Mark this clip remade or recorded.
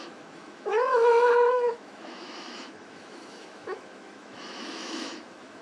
remade